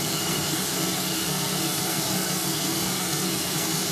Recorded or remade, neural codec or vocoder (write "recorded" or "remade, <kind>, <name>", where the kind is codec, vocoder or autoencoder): remade, codec, SNAC